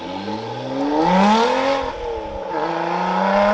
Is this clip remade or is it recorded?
recorded